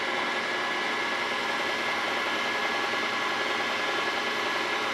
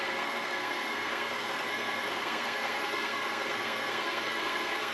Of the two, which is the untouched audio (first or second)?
first